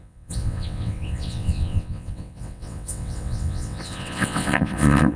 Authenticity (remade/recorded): remade